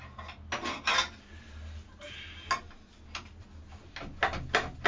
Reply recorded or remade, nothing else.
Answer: recorded